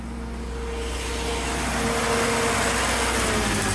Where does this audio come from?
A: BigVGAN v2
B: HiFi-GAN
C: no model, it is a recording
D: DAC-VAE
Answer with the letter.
C